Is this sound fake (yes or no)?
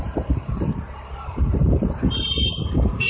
no